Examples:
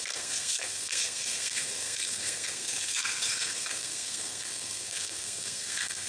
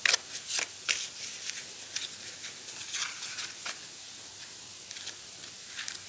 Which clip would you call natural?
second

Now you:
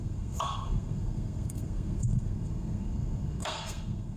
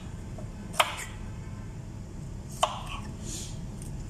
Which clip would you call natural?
second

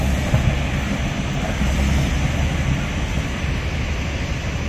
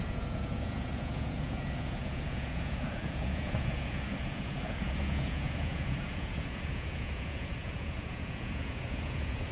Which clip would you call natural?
first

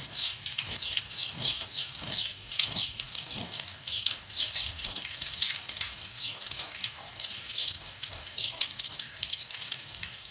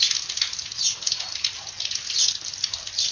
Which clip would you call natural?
second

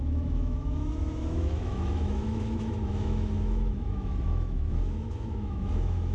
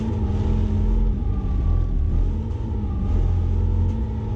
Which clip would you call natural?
second